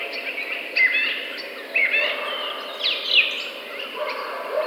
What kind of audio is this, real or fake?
real